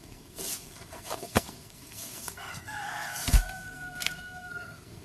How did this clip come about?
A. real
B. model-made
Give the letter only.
B